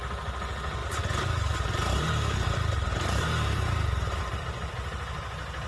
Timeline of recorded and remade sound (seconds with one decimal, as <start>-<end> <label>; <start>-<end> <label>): 0.0-0.8 recorded; 0.8-4.2 remade; 4.2-5.7 recorded